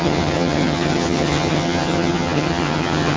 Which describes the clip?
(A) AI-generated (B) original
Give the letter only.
A